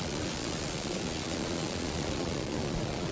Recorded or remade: remade